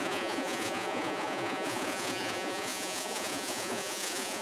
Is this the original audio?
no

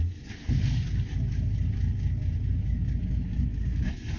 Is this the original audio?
yes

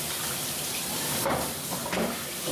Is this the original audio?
no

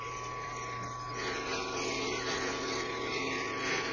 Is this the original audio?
yes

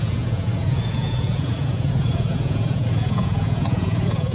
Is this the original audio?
no